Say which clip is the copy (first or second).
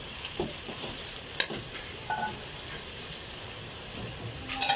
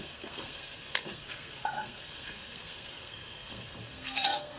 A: second